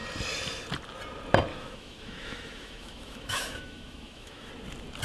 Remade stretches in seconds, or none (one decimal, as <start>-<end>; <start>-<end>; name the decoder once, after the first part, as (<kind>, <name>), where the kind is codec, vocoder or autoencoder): 1.5-4.5 (autoencoder, DAC-VAE)